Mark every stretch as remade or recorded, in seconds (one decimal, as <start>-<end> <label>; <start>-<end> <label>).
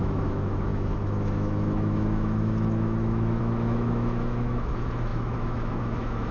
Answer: 0.0-6.3 remade